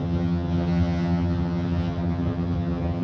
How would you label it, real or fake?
fake